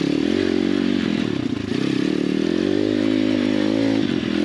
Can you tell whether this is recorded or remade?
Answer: recorded